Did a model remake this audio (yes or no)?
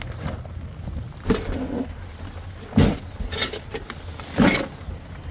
no